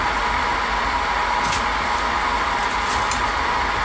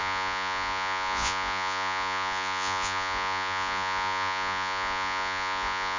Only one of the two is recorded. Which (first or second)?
first